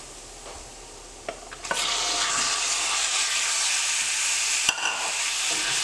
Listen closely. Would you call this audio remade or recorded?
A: recorded